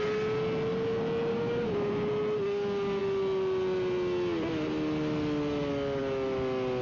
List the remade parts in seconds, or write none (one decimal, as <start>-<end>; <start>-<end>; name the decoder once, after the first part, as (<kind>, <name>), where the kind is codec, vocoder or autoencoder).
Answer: 1.3-1.9 (codec, DAC)